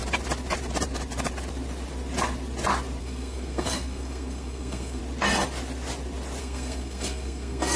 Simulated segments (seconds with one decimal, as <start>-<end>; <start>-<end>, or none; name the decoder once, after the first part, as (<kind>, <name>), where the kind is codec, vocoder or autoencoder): 3.0-5.0 (codec, SNAC); 6.4-7.8